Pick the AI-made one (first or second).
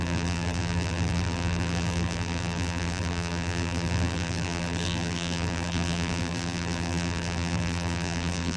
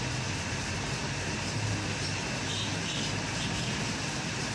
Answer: first